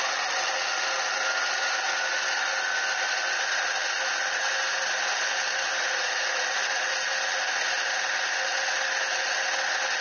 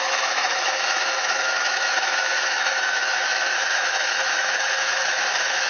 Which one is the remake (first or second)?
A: second